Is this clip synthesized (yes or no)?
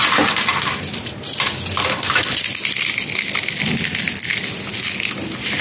no